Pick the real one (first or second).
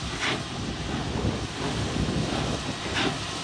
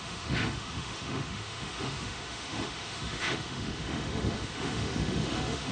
first